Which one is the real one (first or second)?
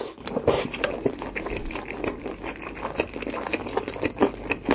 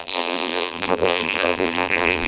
first